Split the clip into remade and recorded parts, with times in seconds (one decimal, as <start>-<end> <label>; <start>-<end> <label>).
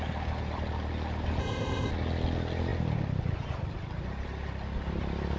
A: 0.0-1.4 recorded; 1.4-1.9 remade; 1.9-5.4 recorded